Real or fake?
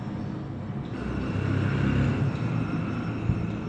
real